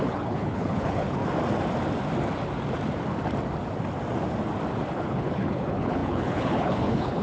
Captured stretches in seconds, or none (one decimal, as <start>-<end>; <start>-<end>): 1.2-4.9